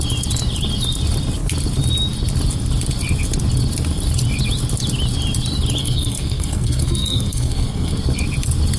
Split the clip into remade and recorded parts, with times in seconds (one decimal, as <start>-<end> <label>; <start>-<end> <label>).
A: 0.0-5.8 recorded; 5.8-8.0 remade; 8.0-8.8 recorded